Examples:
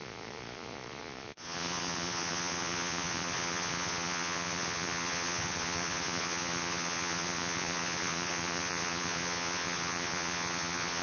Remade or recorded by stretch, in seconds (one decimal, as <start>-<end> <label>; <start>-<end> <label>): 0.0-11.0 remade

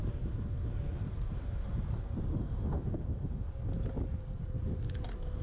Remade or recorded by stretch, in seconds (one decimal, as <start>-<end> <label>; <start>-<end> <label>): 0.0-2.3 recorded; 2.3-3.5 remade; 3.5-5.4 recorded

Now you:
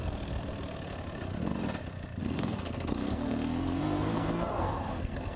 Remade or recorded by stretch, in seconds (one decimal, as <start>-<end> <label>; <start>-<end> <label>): 0.0-2.2 recorded; 2.2-5.4 remade

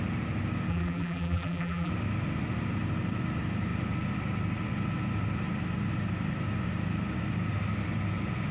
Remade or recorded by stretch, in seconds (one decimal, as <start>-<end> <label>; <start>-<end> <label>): 0.0-0.7 recorded; 0.7-1.9 remade; 1.9-8.5 recorded

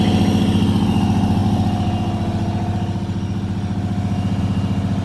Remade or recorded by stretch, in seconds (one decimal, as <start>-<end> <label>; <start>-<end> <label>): 0.0-5.0 recorded

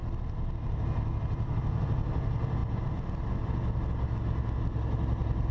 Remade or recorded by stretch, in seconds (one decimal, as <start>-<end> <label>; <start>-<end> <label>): 0.0-5.5 recorded

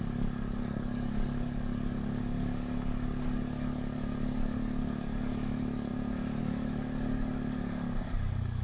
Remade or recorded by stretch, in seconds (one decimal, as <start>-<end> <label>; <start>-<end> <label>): 0.0-5.9 remade; 5.9-6.4 recorded; 6.4-8.6 remade

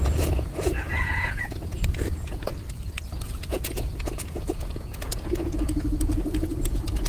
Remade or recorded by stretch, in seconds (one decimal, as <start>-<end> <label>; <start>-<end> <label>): 0.0-2.5 remade; 2.5-3.2 recorded; 3.2-7.1 remade